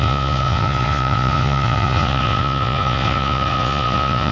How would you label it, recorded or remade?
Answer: remade